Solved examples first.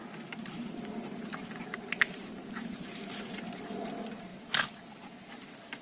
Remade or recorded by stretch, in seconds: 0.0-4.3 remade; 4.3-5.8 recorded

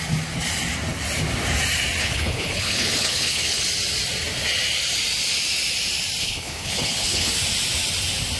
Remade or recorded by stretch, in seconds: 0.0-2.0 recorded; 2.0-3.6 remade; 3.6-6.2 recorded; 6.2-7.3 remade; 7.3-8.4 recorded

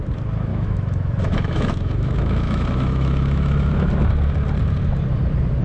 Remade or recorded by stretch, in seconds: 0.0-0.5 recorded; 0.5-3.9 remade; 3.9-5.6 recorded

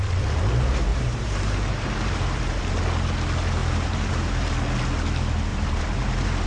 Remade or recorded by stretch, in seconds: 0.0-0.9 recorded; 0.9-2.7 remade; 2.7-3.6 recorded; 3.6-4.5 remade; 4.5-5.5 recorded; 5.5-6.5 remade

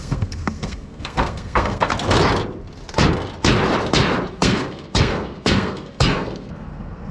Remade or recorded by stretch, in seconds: 0.0-1.9 remade; 1.9-4.3 recorded; 4.3-7.1 remade

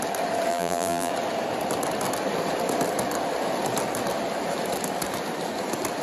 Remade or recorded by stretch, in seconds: 0.0-0.5 recorded; 0.5-1.1 remade; 1.1-6.0 recorded

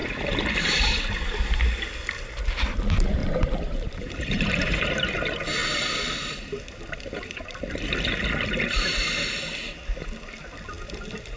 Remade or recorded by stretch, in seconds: 0.0-1.6 remade; 1.6-3.2 recorded; 3.2-5.1 remade; 5.1-11.4 recorded